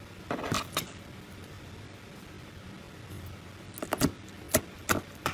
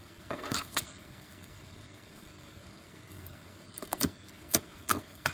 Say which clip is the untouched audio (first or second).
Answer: first